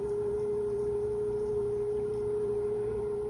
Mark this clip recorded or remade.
remade